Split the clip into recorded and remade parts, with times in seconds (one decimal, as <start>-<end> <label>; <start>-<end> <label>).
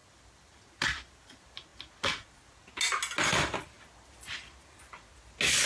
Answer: 0.0-5.7 recorded